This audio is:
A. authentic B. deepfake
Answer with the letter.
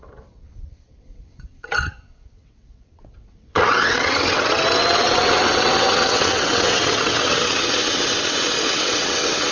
B